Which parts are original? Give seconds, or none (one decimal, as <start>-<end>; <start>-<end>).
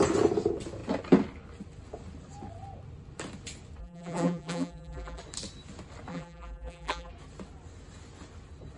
0.0-3.8; 5.2-6.1; 7.1-8.8